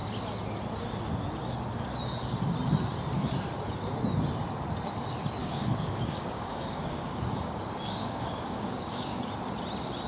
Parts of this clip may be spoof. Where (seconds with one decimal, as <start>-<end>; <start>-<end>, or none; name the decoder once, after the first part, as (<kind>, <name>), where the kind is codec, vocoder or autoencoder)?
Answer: 5.4-9.2 (codec, DAC)